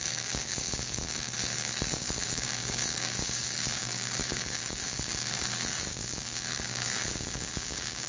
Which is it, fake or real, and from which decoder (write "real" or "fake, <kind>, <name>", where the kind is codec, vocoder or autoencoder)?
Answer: fake, codec, DAC